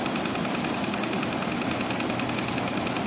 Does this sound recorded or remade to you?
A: recorded